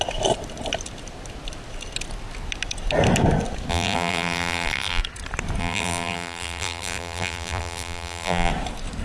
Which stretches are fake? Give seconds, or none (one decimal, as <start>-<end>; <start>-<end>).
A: 3.7-5.0; 5.6-8.5